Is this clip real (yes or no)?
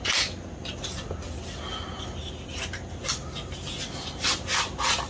yes